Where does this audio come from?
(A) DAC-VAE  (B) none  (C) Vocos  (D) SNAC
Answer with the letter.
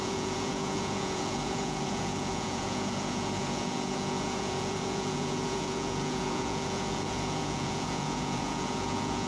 C